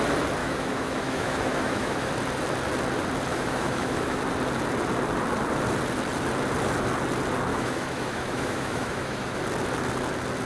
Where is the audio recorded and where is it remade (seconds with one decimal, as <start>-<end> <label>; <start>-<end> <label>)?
0.0-0.4 recorded; 0.4-2.1 remade; 2.1-3.3 recorded; 3.3-4.2 remade; 4.2-7.5 recorded; 7.5-9.4 remade; 9.4-10.5 recorded